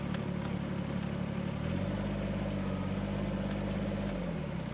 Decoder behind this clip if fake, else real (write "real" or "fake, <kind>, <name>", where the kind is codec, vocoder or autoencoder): real